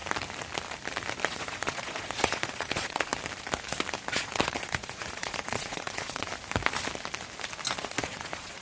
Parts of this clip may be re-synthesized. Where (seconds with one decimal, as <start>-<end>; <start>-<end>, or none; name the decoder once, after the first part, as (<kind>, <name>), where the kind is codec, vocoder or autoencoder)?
1.3-3.1 (vocoder, Vocos); 4.1-6.3; 7.8-8.6